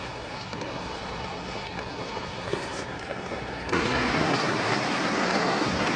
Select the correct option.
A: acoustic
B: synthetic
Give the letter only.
B